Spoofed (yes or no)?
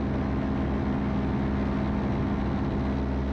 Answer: no